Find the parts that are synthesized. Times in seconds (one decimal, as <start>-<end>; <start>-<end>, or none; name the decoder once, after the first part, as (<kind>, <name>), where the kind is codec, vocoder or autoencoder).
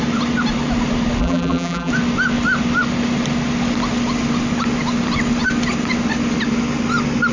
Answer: 1.2-1.9 (vocoder, BigVGAN v2)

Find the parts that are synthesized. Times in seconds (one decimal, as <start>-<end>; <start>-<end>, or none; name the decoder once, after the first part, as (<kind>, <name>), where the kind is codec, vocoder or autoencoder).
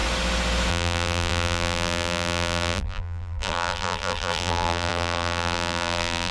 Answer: 0.7-6.3 (vocoder, BigVGAN v2)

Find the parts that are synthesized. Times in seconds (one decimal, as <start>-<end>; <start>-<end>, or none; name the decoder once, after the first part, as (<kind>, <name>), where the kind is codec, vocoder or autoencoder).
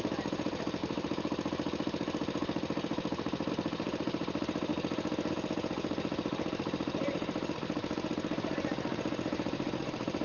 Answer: 0.0-0.8 (vocoder, BigVGAN v2); 3.5-4.7; 5.3-7.8; 8.4-10.2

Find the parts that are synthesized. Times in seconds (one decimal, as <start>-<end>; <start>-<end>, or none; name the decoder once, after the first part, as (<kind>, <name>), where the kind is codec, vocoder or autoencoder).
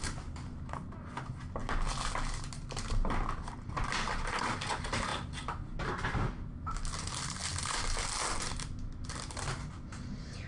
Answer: none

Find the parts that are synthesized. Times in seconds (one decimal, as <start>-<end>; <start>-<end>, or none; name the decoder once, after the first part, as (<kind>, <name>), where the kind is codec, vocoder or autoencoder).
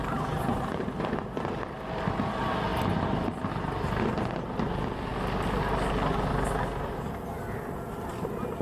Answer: 0.0-0.6 (vocoder, BigVGAN v2)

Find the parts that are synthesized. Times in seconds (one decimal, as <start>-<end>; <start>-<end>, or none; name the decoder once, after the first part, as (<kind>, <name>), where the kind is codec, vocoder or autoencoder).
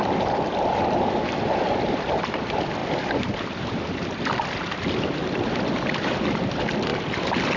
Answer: 0.0-2.8 (vocoder, BigVGAN v2); 3.6-7.6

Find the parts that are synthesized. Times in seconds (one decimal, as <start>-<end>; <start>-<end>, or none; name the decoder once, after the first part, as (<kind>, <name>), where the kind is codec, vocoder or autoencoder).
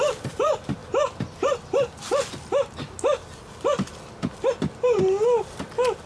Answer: 0.0-0.8 (vocoder, BigVGAN v2); 4.5-6.1